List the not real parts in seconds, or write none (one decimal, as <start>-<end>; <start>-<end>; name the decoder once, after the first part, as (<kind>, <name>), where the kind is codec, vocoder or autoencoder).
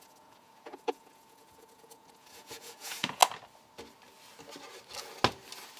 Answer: 0.0-3.2 (vocoder, Vocos)